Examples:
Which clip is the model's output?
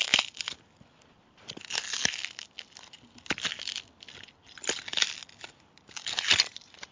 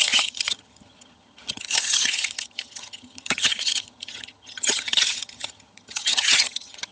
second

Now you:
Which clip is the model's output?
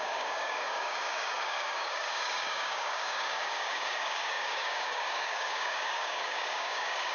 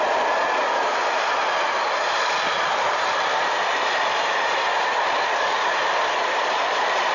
first